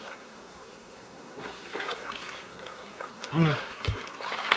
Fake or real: fake